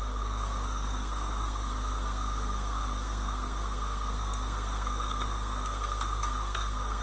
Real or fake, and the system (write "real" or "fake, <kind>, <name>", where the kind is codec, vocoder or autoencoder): fake, codec, SNAC